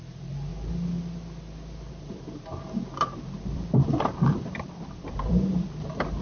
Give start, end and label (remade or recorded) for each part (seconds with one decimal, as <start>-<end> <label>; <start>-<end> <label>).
0.0-0.5 remade; 0.5-1.9 recorded; 1.9-6.2 remade